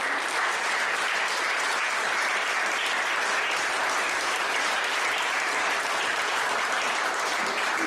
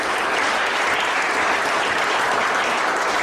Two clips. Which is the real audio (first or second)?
second